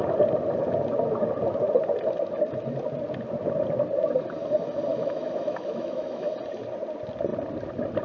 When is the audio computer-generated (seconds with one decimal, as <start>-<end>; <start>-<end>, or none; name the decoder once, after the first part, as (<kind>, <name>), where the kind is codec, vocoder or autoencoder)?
4.9-6.3 (autoencoder, DAC-VAE)

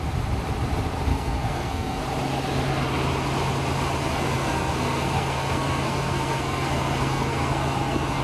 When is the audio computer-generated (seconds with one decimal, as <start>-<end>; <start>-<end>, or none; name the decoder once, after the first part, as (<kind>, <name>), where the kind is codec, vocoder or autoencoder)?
1.1-2.0 (codec, SNAC); 4.0-8.2

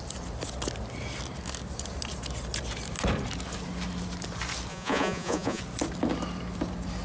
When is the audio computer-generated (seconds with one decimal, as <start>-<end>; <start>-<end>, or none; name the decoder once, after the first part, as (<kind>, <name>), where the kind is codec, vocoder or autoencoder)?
4.7-5.6 (vocoder, Vocos)

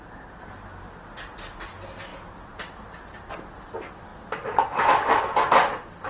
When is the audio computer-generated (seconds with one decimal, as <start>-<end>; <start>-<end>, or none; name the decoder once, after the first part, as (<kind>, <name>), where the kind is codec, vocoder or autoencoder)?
none

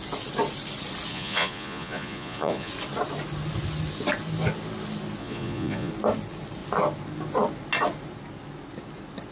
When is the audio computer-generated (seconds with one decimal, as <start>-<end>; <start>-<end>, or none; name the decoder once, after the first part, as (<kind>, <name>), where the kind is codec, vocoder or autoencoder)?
1.1-2.7 (vocoder, Vocos); 5.2-5.9